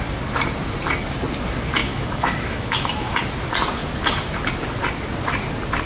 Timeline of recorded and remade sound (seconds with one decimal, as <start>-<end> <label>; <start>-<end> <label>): 0.0-1.8 recorded; 1.8-3.2 remade; 3.2-5.9 recorded